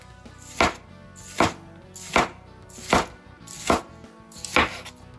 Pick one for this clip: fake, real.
real